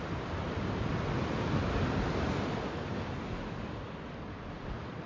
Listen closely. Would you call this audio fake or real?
real